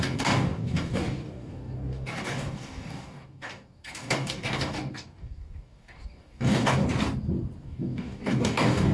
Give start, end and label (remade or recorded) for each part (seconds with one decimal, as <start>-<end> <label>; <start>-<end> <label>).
0.0-6.8 remade; 6.8-7.6 recorded; 7.6-8.9 remade